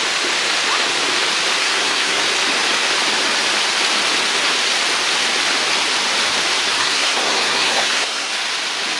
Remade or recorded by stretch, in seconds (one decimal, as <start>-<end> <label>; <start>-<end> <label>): 0.0-1.6 recorded; 1.6-2.2 remade; 2.2-6.8 recorded; 6.8-8.3 remade; 8.3-9.0 recorded